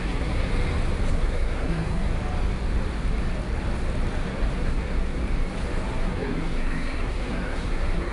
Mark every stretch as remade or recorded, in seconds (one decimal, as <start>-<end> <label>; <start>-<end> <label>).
0.0-0.5 remade; 0.5-1.1 recorded; 1.1-2.1 remade; 2.1-4.6 recorded; 4.6-5.2 remade; 5.2-6.0 recorded; 6.0-8.1 remade